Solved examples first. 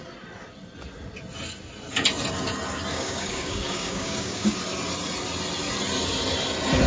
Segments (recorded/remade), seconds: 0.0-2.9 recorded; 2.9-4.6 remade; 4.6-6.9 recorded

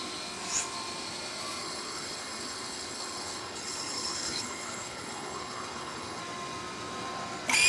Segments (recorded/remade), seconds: 0.0-1.6 recorded; 1.6-6.2 remade; 6.2-7.7 recorded